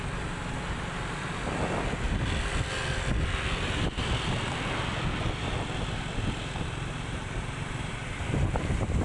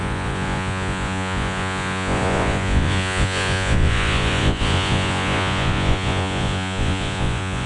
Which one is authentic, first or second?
first